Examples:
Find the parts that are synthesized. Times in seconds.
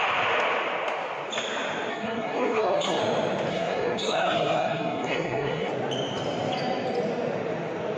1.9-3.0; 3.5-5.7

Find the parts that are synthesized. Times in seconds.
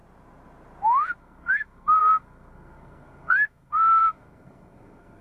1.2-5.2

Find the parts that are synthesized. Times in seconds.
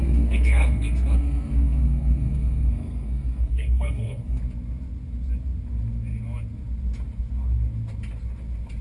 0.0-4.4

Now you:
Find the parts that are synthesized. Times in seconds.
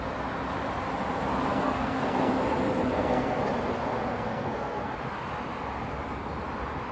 1.5-2.3; 2.9-3.4; 4.1-4.9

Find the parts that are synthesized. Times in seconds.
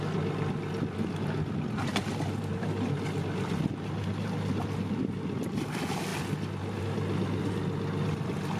none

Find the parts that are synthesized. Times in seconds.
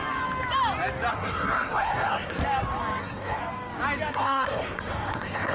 1.1-2.4; 3.0-3.4; 4.1-5.5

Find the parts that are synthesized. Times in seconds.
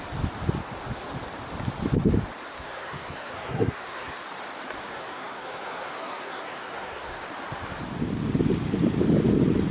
2.5-4.2; 4.9-7.2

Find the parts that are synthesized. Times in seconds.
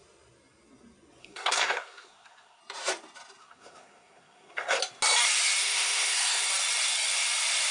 1.2-2.6; 3.4-4.8; 5.6-6.5